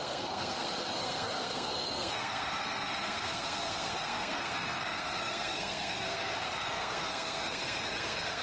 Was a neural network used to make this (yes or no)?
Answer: yes